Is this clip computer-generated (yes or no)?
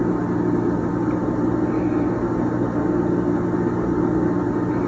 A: no